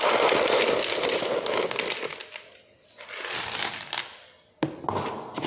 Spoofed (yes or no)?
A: no